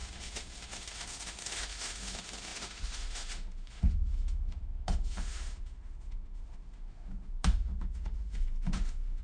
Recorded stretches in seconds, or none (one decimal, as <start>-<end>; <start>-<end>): none